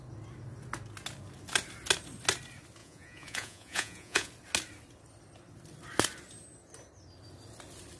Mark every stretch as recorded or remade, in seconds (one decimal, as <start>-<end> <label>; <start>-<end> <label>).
0.0-2.8 recorded; 2.8-4.3 remade; 4.3-8.0 recorded

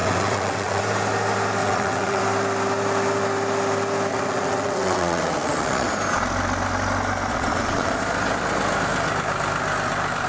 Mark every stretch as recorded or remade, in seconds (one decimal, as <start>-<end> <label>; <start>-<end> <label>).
0.0-0.8 remade; 0.8-1.6 recorded; 1.6-2.2 remade; 2.2-4.1 recorded; 4.1-5.9 remade; 5.9-7.3 recorded; 7.3-7.9 remade; 7.9-10.3 recorded

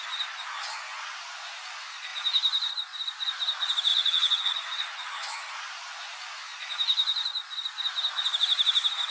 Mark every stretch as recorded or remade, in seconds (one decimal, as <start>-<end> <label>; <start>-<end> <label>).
0.0-3.9 recorded; 3.9-5.5 remade; 5.5-9.1 recorded

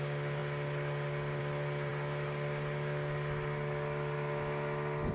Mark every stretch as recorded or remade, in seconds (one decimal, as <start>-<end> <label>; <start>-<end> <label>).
0.0-5.1 recorded

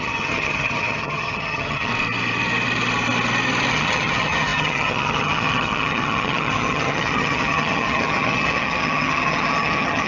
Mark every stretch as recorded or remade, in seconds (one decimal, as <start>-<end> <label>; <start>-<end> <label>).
0.0-1.9 remade; 1.9-3.7 recorded; 3.7-10.1 remade

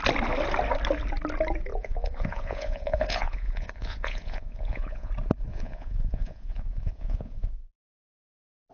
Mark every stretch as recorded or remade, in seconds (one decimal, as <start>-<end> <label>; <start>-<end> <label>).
0.0-1.7 recorded; 1.7-5.1 remade; 5.1-5.5 recorded; 5.5-7.5 remade; 7.5-8.7 recorded

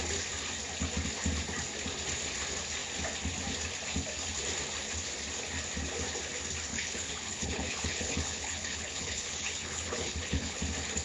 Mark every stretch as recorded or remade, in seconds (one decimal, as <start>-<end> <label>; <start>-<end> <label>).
0.0-6.7 recorded; 6.7-10.6 remade; 10.6-11.0 recorded